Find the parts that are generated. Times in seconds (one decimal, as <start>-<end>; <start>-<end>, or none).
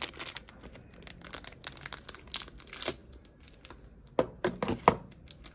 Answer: none